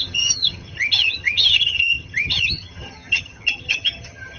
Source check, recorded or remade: remade